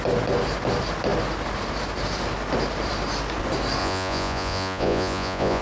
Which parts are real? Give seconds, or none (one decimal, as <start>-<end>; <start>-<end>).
0.0-3.8